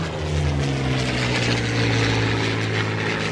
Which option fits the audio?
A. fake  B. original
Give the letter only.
B